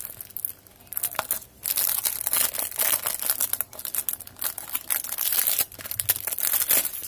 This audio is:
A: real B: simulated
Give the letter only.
A